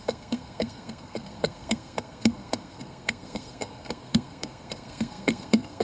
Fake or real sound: fake